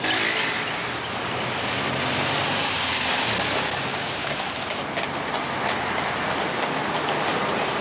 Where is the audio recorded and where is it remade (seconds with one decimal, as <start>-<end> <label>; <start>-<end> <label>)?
0.0-3.9 recorded; 3.9-4.5 remade; 4.5-7.8 recorded